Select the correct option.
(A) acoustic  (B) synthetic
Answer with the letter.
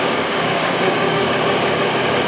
B